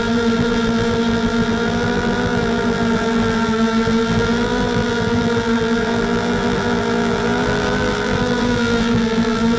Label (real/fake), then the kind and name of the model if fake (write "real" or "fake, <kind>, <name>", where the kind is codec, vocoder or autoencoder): fake, vocoder, BigVGAN v2